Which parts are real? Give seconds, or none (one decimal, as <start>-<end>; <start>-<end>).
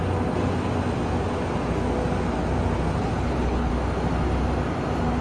0.0-3.0; 3.7-5.2